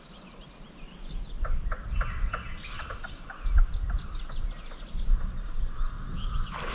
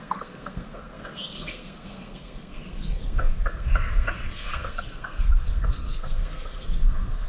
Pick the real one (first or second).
first